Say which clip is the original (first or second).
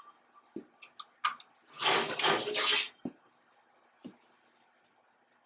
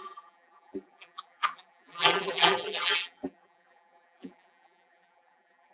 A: first